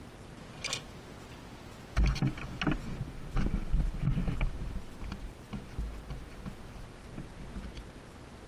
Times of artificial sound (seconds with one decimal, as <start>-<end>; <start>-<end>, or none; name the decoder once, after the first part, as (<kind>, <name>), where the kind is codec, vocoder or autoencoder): 3.2-5.7 (vocoder, BigVGAN v2)